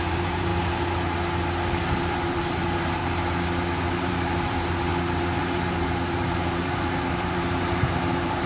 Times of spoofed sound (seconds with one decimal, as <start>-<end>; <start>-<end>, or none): 0.0-0.5; 2.1-3.0; 3.9-4.9; 5.4-8.5